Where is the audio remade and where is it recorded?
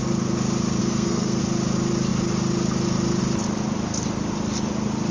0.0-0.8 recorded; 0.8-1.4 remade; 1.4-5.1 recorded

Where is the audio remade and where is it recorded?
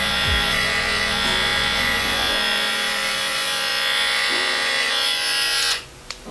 0.0-6.3 remade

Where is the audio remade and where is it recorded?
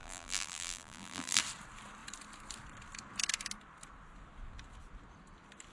0.0-1.4 remade; 1.4-5.7 recorded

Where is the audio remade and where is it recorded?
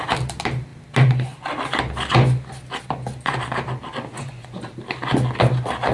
0.0-4.1 recorded; 4.1-4.7 remade; 4.7-5.9 recorded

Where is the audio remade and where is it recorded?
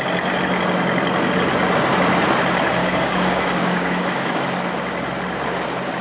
0.0-2.8 recorded; 2.8-4.4 remade; 4.4-6.0 recorded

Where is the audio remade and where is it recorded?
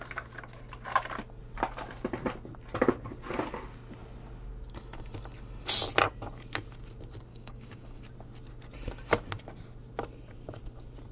0.0-7.3 recorded; 7.3-8.0 remade; 8.0-11.1 recorded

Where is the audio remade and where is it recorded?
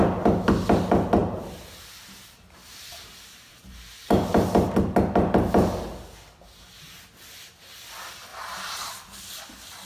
0.0-1.2 recorded; 1.2-4.4 remade; 4.4-8.3 recorded; 8.3-8.9 remade; 8.9-9.9 recorded